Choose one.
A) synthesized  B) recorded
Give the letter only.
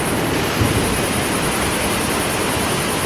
B